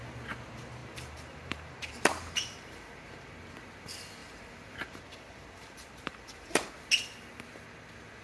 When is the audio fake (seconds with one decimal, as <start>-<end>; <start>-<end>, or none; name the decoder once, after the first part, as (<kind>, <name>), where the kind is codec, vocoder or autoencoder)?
0.8-3.3 (vocoder, BigVGAN v2); 4.2-6.7